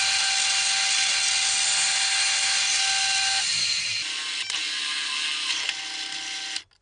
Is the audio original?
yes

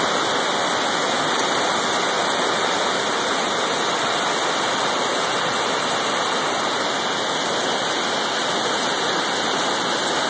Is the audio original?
yes